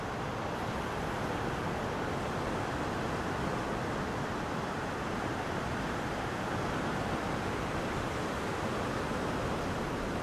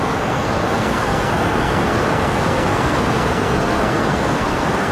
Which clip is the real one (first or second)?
first